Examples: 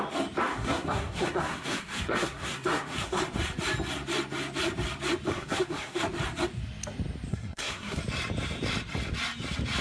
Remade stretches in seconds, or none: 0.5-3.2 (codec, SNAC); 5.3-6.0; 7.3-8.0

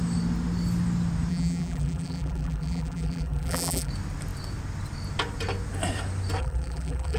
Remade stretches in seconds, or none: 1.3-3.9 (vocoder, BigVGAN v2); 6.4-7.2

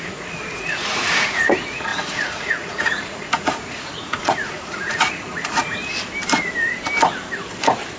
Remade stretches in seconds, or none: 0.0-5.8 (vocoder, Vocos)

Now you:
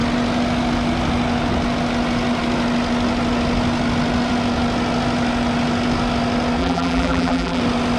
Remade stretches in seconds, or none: 6.6-7.6 (vocoder, BigVGAN v2)

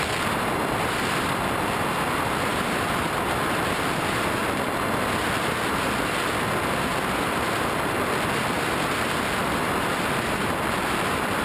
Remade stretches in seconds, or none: 0.0-4.4 (vocoder, BigVGAN v2); 7.1-11.4

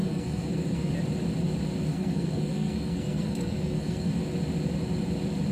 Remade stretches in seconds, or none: 0.0-0.9 (codec, SNAC); 1.9-4.1

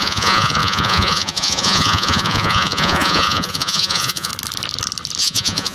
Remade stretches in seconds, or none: 0.0-4.3 (vocoder, Vocos); 5.2-5.7

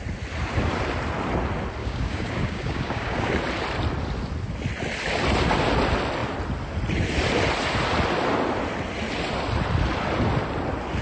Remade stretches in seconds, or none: 1.8-3.3 (codec, DAC)